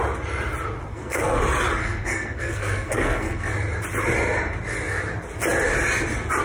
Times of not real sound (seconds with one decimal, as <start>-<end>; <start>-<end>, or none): 0.9-1.4; 1.8-3.5